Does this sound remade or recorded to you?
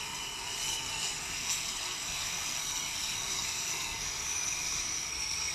remade